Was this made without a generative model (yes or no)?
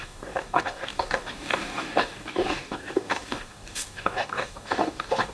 no